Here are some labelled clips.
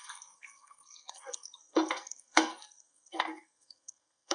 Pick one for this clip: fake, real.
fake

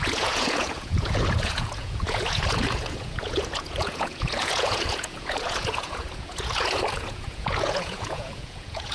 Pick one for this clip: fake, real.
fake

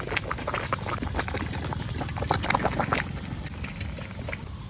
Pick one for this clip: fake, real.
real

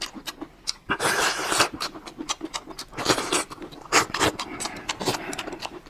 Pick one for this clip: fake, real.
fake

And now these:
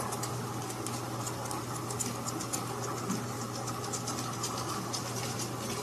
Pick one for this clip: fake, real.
real